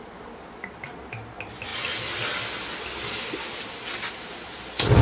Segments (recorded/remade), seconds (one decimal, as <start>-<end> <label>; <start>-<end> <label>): 0.0-5.0 recorded